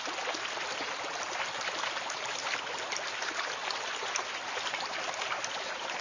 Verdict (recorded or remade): recorded